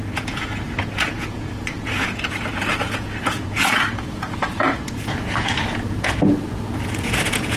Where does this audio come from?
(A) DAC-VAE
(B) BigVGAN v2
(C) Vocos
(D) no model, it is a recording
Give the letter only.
C